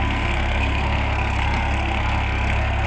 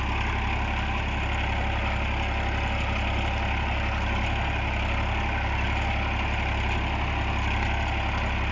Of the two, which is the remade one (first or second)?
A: first